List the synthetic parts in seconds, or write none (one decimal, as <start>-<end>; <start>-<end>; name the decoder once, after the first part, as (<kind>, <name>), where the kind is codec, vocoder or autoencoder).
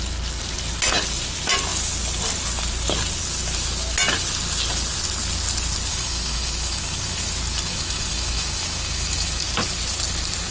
5.9-7.3 (autoencoder, DAC-VAE); 7.7-9.4